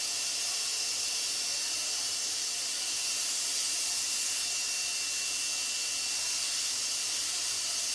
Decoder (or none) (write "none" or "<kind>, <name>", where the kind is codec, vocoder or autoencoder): none